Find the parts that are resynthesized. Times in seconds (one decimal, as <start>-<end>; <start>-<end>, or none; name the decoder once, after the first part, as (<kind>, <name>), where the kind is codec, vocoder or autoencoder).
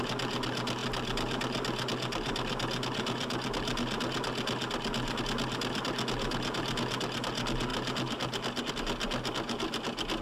none